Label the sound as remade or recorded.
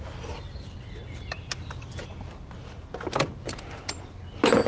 recorded